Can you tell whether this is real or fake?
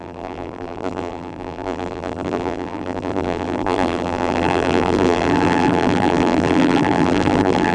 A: fake